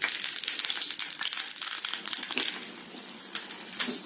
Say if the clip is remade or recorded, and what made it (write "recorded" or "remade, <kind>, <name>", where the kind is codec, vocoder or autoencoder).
recorded